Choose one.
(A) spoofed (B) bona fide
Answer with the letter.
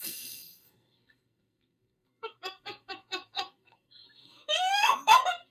A